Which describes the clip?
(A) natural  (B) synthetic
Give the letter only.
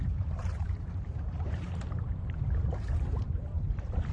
B